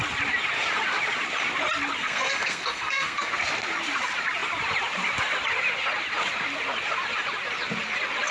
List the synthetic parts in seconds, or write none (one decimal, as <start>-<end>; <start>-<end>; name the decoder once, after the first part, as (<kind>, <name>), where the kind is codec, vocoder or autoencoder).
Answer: 2.0-3.3 (codec, SNAC)